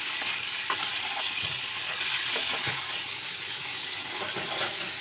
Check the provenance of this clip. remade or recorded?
remade